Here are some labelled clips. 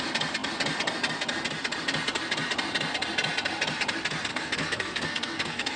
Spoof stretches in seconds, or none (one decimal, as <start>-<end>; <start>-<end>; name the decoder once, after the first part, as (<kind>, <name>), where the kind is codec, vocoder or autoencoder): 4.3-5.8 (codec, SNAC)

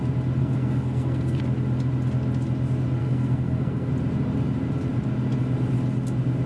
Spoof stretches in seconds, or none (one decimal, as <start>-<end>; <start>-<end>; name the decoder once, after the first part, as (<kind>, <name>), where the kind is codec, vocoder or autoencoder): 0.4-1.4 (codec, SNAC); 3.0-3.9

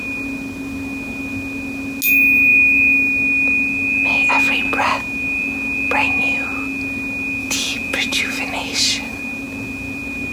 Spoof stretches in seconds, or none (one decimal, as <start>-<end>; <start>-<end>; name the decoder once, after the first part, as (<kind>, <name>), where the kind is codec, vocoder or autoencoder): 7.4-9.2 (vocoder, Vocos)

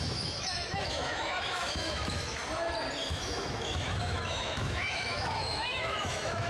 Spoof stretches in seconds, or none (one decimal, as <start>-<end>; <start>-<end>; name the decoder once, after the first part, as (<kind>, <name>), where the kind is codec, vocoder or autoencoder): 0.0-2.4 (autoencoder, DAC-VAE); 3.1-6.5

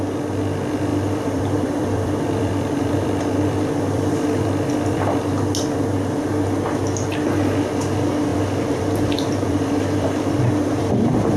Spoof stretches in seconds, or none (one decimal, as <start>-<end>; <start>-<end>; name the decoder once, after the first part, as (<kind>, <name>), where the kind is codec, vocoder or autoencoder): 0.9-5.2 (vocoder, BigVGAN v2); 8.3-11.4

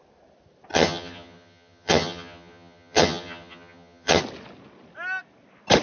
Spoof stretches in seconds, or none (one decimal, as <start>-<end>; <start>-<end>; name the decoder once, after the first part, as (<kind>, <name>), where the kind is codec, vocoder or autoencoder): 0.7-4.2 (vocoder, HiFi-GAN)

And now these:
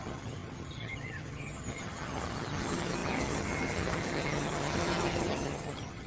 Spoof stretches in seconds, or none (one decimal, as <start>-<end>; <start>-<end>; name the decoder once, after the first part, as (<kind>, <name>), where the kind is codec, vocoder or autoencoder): 0.0-6.1 (vocoder, HiFi-GAN)

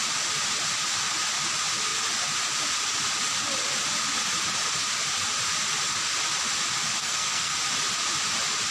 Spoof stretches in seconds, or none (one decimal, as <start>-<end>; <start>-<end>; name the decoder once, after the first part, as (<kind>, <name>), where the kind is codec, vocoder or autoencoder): 7.0-7.5 (codec, SNAC)